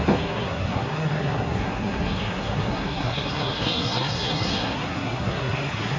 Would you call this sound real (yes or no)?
no